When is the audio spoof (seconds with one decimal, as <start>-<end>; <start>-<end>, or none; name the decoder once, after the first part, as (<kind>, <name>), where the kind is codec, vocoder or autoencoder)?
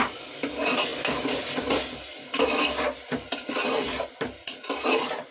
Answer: none